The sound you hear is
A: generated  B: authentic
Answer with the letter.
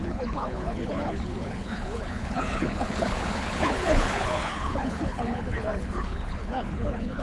A